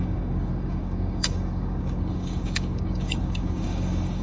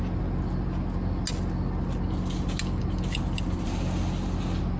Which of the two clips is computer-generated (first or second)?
first